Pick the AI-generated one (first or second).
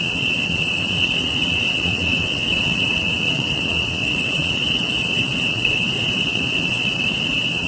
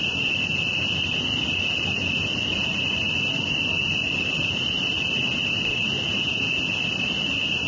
first